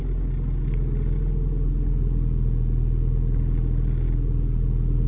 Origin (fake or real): real